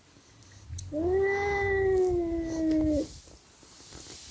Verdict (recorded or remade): recorded